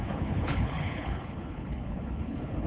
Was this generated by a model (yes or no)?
yes